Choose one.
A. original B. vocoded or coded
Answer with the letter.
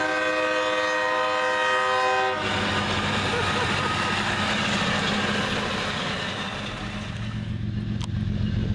A